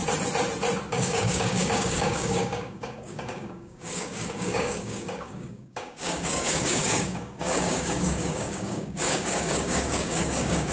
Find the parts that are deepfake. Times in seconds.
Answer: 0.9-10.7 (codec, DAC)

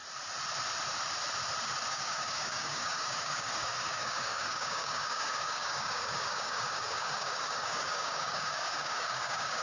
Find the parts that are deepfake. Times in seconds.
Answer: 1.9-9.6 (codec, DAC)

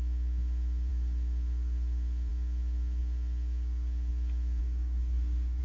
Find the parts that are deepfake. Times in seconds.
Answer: 4.6-5.6 (codec, DAC)

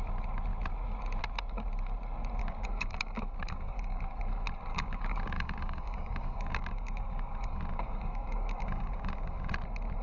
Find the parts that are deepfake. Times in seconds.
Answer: 2.4-4.0 (codec, DAC); 4.7-9.5